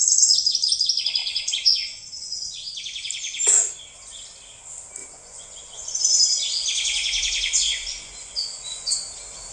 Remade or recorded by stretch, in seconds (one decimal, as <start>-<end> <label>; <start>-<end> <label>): 0.0-1.2 recorded; 1.2-2.7 remade; 2.7-5.0 recorded; 5.0-5.9 remade; 5.9-7.0 recorded; 7.0-8.9 remade; 8.9-9.5 recorded